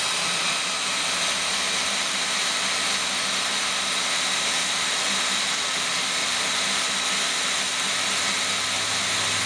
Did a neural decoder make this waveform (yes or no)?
no